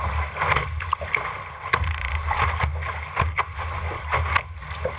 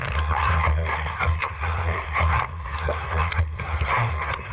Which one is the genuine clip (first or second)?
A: first